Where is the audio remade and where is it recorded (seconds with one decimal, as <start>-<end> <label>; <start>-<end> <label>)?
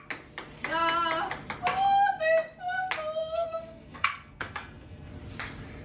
0.0-3.2 recorded; 3.2-5.1 remade; 5.1-5.8 recorded